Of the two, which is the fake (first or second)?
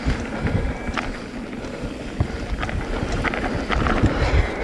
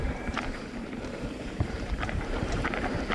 second